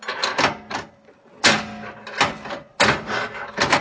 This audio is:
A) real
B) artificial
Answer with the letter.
A